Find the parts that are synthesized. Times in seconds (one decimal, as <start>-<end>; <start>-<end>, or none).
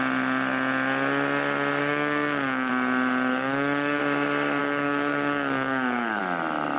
1.8-2.7; 3.3-4.0; 4.6-6.2